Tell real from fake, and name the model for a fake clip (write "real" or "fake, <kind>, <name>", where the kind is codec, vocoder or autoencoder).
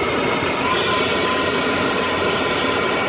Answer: real